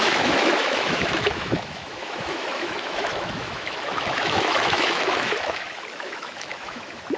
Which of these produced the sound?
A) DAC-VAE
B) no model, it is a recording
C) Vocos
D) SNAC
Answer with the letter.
A